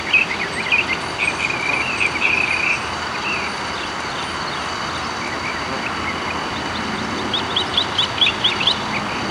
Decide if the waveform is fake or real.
real